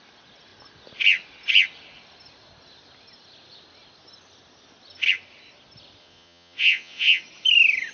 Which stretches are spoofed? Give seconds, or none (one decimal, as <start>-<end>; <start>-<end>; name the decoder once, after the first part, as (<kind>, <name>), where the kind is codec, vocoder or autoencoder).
6.0-7.2 (vocoder, Vocos)